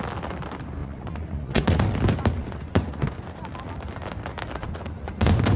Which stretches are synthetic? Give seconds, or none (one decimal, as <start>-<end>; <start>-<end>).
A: 0.8-1.8; 2.4-3.4; 4.6-5.6

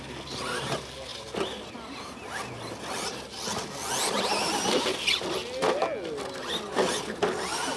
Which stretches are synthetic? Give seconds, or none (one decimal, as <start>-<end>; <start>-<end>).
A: none

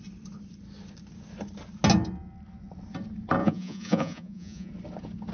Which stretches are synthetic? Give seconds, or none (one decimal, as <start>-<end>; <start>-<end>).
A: 3.4-4.7

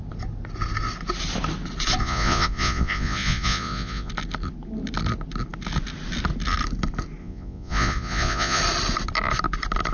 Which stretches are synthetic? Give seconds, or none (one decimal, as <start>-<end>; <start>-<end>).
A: 2.0-4.1; 7.2-8.6

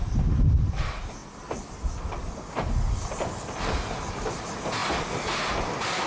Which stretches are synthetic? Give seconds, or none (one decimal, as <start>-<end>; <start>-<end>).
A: none